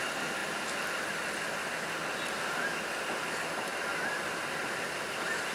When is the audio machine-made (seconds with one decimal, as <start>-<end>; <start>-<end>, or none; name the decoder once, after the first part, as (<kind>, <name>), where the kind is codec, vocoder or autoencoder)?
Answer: 0.4-1.1 (vocoder, BigVGAN v2); 3.7-4.8